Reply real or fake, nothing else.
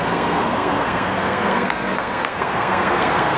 fake